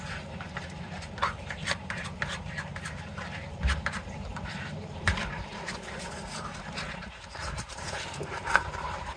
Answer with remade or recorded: remade